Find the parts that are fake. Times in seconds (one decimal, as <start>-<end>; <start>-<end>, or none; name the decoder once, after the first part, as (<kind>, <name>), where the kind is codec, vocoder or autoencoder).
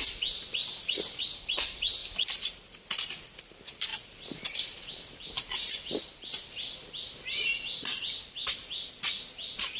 0.0-0.6 (vocoder, BigVGAN v2); 1.2-2.0; 3.4-9.8